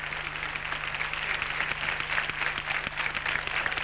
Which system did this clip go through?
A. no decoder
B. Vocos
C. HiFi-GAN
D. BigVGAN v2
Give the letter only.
A